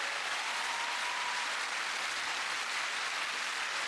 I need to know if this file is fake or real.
real